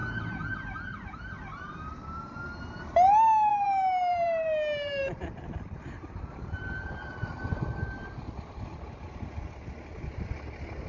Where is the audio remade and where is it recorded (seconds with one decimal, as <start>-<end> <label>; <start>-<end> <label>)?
0.0-3.5 recorded; 3.5-6.2 remade; 6.2-10.9 recorded